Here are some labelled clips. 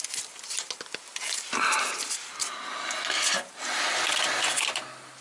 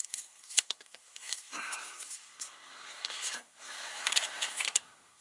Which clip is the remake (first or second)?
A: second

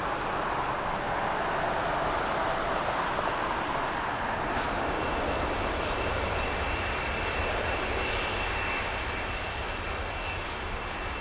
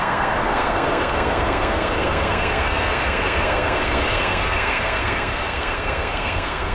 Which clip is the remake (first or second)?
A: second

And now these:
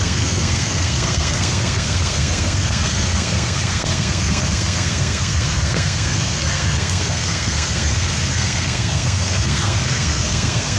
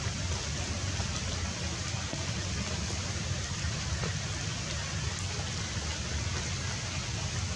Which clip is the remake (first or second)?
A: first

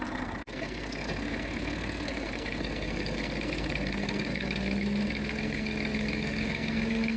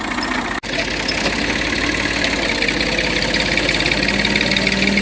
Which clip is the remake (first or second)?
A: first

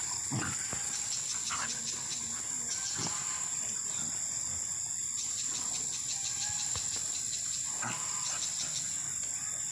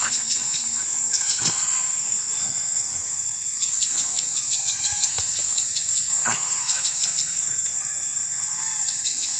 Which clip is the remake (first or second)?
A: second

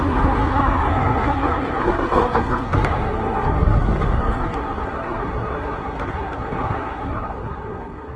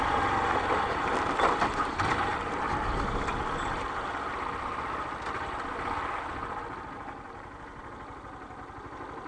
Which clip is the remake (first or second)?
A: first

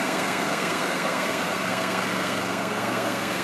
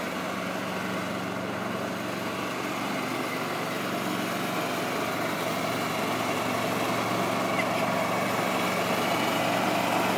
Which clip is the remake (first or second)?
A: first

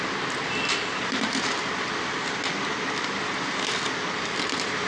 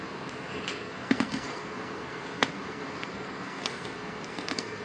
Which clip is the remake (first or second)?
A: second